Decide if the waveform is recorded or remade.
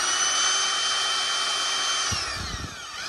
recorded